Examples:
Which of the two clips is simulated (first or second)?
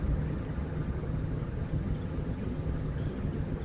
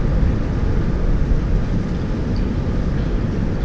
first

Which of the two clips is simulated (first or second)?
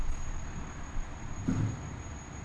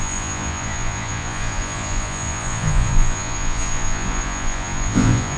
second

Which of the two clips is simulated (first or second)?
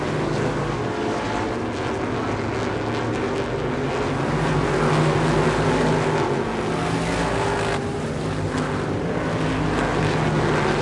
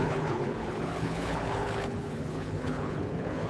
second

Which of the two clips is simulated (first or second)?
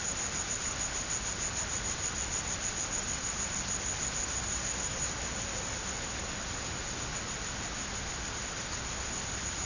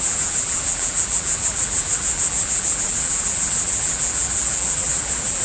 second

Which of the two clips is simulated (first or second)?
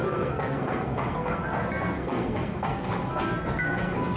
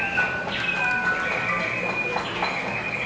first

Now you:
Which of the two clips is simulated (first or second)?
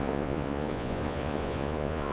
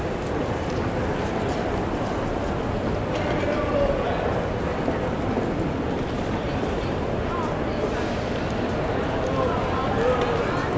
first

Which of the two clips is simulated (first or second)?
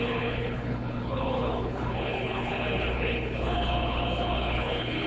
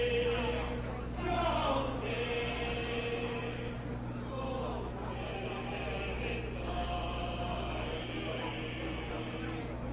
first